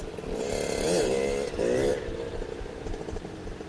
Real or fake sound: real